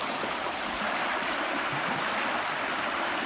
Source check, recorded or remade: recorded